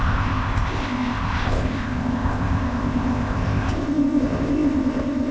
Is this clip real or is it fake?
fake